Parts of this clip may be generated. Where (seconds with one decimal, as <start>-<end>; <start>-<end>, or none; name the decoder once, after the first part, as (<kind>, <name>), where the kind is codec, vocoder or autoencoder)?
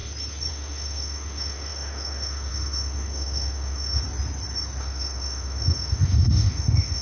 0.5-4.0 (autoencoder, DAC-VAE); 4.8-7.0